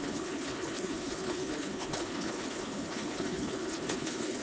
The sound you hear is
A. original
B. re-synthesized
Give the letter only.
B